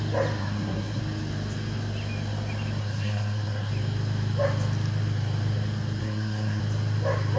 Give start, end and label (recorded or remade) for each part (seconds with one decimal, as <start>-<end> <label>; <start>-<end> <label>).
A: 0.0-0.4 recorded; 0.4-1.0 remade; 1.0-2.8 recorded; 2.8-3.7 remade; 3.7-6.0 recorded; 6.0-6.6 remade; 6.6-7.4 recorded